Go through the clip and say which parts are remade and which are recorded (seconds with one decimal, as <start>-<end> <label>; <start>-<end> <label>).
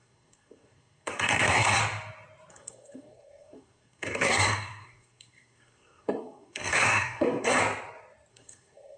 0.0-1.8 remade; 1.8-2.5 recorded; 2.5-7.6 remade; 7.6-8.3 recorded; 8.3-9.0 remade